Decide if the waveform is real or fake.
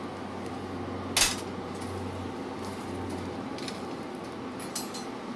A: real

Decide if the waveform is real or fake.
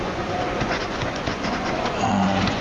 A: fake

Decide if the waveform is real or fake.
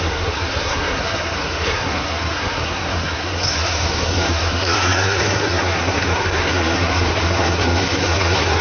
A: fake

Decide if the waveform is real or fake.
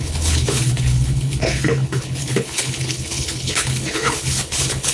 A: fake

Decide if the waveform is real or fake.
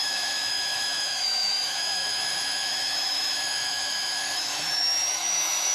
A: fake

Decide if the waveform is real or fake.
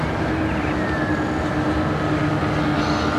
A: real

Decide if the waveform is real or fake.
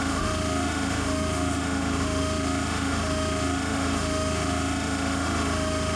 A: fake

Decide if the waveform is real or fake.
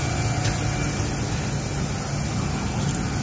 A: real